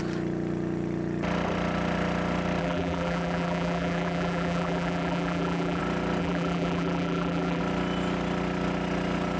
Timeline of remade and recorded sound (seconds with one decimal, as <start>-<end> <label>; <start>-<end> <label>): 0.0-2.6 recorded; 2.6-5.8 remade; 5.8-6.2 recorded; 6.2-7.6 remade; 7.6-9.4 recorded